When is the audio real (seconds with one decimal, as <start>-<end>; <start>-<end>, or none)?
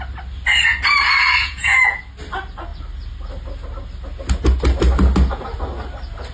0.0-1.4; 2.0-6.3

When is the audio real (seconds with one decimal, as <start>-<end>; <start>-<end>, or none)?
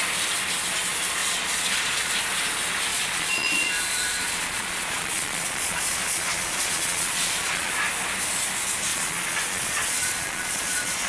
0.0-1.2; 2.1-2.9; 7.7-8.9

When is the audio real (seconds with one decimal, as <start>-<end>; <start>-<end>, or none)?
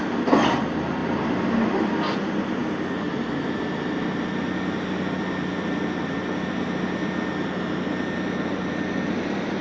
0.0-9.6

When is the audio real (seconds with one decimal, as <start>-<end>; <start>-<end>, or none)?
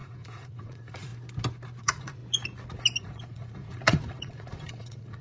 1.1-1.8; 2.2-3.0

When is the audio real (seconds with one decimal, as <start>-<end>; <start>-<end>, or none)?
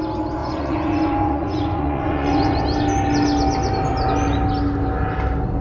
0.0-0.4; 2.6-5.6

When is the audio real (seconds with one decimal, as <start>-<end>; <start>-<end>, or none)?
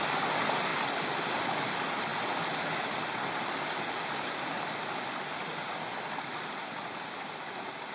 0.0-7.9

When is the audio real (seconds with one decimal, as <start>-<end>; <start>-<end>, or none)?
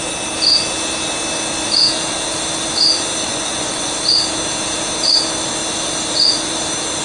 0.0-3.3; 3.9-7.0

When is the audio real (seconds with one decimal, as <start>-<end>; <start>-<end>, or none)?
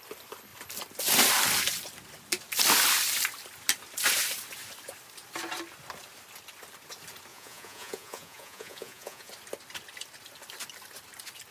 0.0-7.3; 9.3-11.5